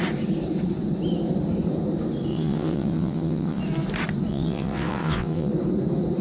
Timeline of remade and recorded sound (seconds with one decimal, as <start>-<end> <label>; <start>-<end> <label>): 0.0-2.3 recorded; 2.3-3.6 remade; 3.6-4.3 recorded; 4.3-5.5 remade; 5.5-6.2 recorded